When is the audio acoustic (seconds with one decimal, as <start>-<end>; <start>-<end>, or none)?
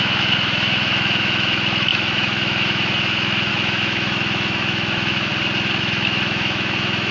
5.3-5.8